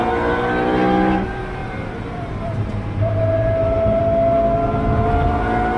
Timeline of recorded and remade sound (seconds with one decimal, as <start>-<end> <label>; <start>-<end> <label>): 0.0-1.6 recorded; 1.6-4.0 remade; 4.0-5.8 recorded